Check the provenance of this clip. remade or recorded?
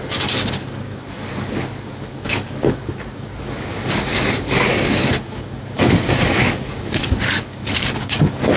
remade